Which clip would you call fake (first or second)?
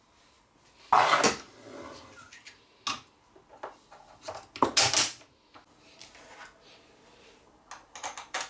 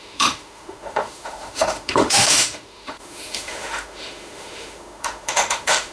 second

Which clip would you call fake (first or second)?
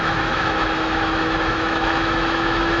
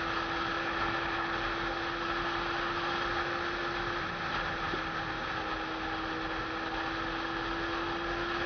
first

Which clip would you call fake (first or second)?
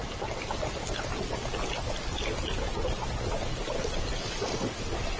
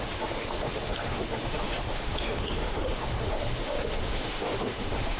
second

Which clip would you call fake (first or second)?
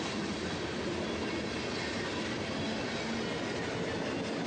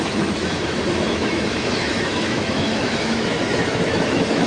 second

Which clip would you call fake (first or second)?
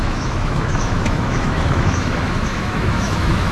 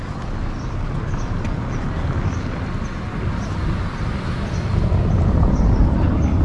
first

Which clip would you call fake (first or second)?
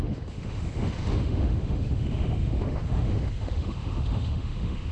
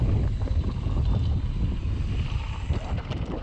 first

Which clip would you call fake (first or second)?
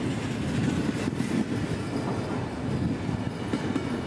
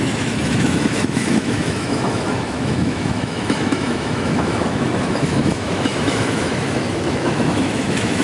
second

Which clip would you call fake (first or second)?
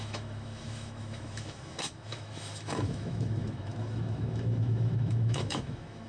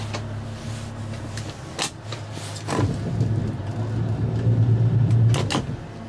first